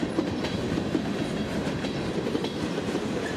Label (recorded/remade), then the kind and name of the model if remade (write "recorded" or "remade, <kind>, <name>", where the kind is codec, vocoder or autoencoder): remade, vocoder, BigVGAN v2